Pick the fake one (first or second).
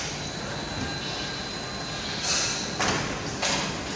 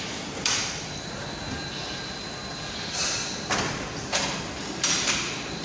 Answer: second